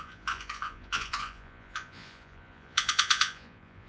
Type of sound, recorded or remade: remade